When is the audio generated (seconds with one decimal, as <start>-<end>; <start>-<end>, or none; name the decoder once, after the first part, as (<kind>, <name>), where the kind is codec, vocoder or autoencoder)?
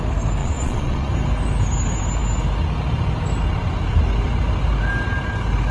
0.4-1.1 (vocoder, Vocos)